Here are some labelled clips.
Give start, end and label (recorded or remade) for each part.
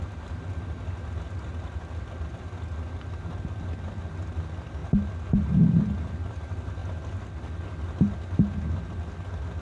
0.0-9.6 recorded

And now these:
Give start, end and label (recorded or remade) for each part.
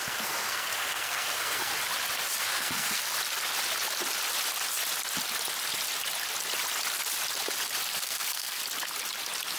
0.0-1.7 remade; 1.7-2.4 recorded; 2.4-3.1 remade; 3.1-8.0 recorded; 8.0-8.6 remade; 8.6-9.6 recorded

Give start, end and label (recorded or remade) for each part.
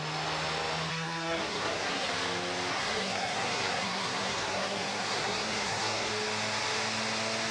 0.0-0.9 recorded; 0.9-2.1 remade; 2.1-2.7 recorded; 2.7-6.1 remade; 6.1-7.5 recorded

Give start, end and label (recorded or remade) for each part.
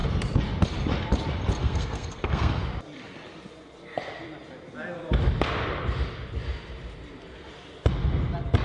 0.0-1.6 recorded; 1.6-2.6 remade; 2.6-8.6 recorded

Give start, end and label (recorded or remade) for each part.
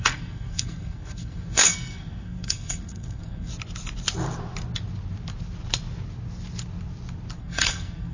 0.0-3.5 remade; 3.5-7.4 recorded; 7.4-8.1 remade